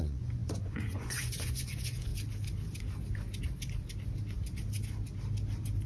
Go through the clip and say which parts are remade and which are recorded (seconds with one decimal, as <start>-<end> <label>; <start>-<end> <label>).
0.0-2.1 remade; 2.1-5.9 recorded